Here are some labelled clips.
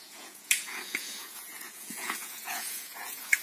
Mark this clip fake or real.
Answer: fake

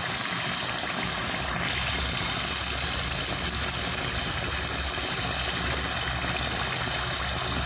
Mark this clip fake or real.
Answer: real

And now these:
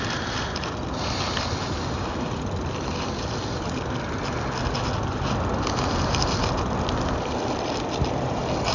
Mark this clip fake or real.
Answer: real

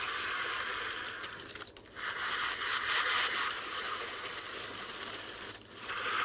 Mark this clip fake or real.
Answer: real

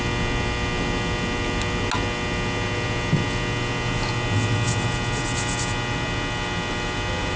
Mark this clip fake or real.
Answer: real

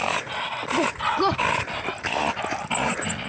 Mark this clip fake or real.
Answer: real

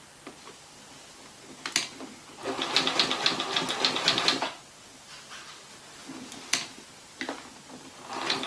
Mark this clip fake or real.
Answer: real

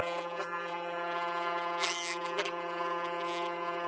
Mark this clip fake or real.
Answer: fake